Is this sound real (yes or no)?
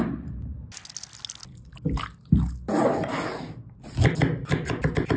yes